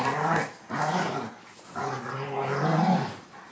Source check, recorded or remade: recorded